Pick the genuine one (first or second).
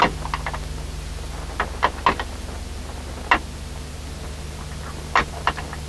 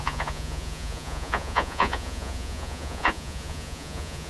first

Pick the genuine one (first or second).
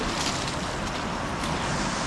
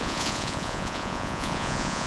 first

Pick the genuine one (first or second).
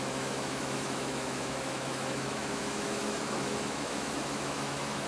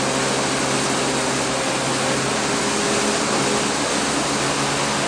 second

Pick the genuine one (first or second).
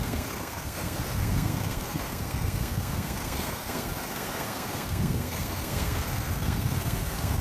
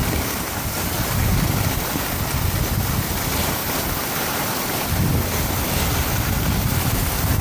second